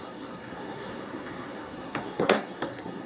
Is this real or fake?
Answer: fake